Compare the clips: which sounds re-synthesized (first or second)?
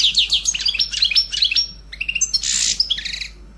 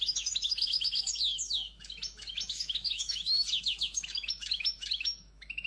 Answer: second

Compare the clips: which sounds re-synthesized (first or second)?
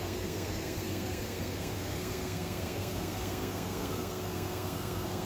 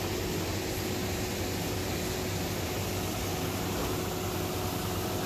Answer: first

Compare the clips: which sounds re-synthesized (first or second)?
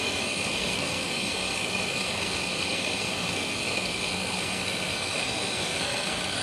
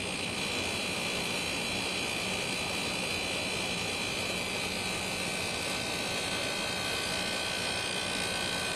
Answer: first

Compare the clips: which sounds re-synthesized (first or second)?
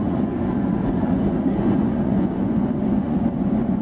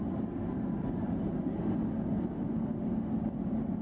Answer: first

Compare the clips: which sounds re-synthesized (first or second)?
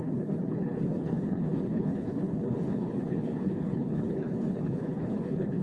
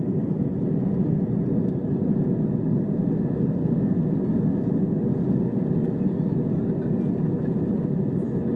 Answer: first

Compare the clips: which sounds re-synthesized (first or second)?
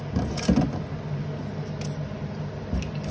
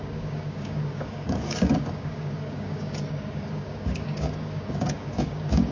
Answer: second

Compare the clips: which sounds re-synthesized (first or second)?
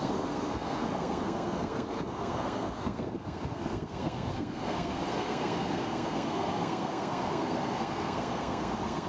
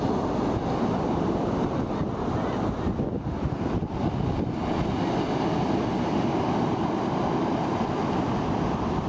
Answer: first